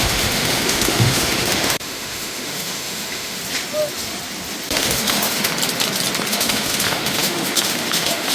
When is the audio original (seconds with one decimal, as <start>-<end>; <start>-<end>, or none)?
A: 3.4-4.7; 5.5-6.3